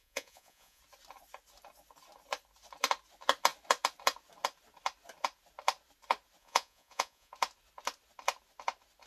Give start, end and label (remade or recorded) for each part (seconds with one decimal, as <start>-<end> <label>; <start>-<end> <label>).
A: 0.0-0.8 remade; 0.8-6.4 recorded; 6.4-7.3 remade; 7.3-9.1 recorded

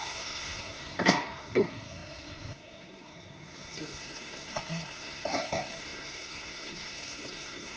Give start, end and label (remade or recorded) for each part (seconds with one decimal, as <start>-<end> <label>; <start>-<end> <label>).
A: 0.0-7.8 remade

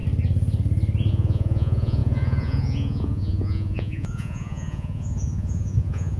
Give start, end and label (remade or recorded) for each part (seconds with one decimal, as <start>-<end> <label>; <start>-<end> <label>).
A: 0.0-1.1 recorded; 1.1-6.2 remade

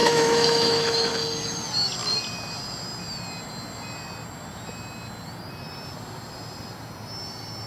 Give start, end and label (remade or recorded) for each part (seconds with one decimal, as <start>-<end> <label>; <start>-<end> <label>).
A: 0.0-1.1 remade; 1.1-7.7 recorded